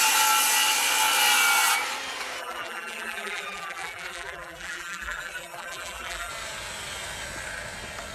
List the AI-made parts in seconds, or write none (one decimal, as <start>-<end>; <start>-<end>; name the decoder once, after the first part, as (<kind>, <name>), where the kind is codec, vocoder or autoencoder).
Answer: 2.4-6.3 (vocoder, BigVGAN v2)